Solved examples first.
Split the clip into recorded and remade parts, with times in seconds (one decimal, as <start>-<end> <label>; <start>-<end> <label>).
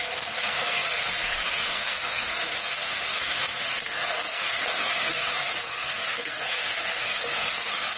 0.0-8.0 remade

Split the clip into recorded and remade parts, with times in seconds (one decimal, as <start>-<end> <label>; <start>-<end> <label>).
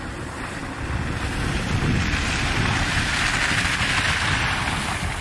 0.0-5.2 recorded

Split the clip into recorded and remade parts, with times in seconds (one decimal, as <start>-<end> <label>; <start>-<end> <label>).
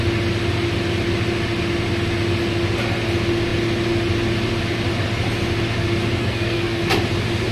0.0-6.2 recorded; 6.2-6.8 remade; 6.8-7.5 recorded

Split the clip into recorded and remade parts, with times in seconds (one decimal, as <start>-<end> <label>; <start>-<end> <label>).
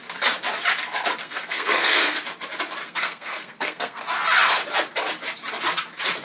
0.0-1.2 recorded; 1.2-2.2 remade; 2.2-2.8 recorded; 2.8-4.0 remade; 4.0-6.2 recorded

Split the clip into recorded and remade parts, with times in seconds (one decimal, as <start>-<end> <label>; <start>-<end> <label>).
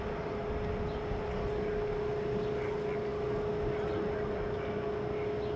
0.0-5.6 recorded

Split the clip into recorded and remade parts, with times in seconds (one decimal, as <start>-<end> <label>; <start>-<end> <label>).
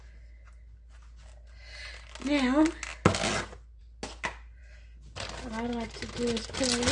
0.0-6.9 recorded